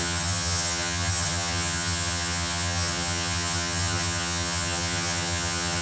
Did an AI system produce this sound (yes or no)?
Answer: yes